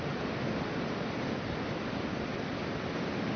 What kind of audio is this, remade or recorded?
recorded